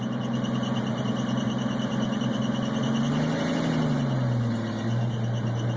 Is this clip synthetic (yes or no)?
no